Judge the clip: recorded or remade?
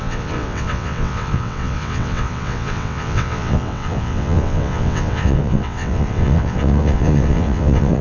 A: remade